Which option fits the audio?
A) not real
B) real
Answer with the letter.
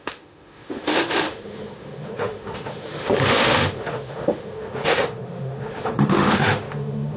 A